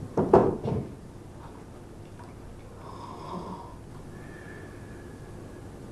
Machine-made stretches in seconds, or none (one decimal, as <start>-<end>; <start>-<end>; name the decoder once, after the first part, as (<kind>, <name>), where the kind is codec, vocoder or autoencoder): none